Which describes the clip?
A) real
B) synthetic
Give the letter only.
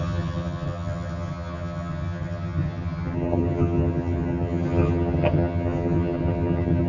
B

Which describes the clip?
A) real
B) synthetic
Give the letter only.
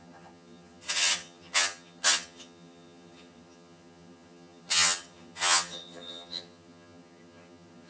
B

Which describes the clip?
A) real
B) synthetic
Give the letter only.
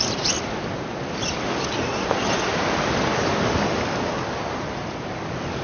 A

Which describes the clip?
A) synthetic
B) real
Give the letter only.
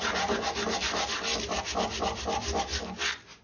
B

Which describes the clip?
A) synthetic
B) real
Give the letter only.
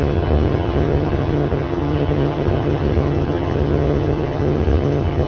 A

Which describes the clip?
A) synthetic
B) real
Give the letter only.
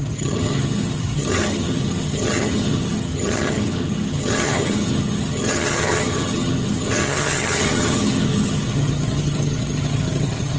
A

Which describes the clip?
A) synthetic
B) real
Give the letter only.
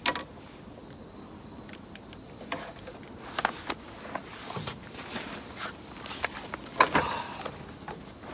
B